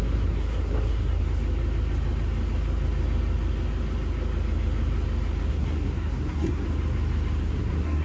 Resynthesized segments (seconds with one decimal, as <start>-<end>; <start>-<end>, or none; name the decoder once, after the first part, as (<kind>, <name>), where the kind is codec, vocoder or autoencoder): 0.0-1.2 (codec, SNAC); 5.5-6.6; 7.4-8.0